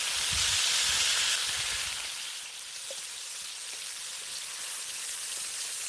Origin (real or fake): real